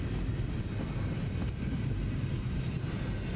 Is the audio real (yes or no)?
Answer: yes